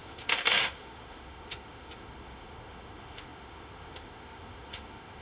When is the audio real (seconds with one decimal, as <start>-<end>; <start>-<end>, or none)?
none